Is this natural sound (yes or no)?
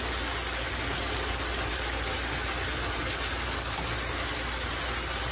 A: yes